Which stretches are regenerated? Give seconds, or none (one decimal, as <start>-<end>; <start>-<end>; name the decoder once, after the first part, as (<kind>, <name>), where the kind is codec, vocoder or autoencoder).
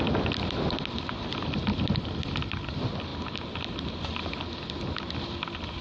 none